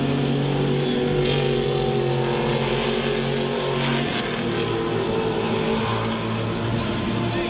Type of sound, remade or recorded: recorded